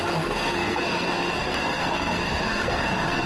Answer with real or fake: fake